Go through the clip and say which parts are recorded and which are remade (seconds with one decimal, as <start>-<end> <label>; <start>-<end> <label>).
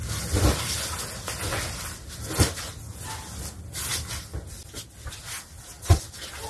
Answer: 0.0-6.5 recorded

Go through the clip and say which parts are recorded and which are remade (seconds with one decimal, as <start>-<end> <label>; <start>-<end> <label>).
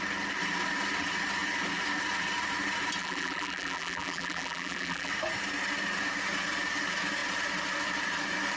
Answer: 0.0-3.0 recorded; 3.0-5.1 remade; 5.1-8.6 recorded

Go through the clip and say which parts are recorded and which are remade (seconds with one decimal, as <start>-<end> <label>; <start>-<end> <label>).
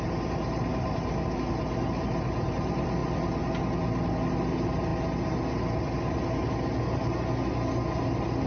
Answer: 0.0-8.5 recorded